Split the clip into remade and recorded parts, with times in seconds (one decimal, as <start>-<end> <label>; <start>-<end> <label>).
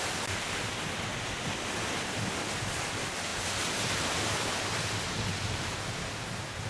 0.0-6.7 recorded